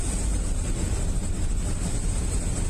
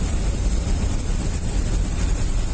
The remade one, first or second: second